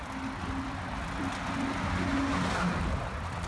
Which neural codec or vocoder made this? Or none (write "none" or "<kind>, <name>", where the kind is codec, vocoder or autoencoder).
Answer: none